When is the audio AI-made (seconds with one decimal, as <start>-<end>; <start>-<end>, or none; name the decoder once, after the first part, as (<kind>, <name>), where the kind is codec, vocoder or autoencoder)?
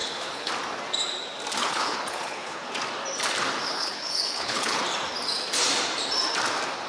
0.0-0.5 (codec, HILCodec); 1.6-2.7; 3.7-4.8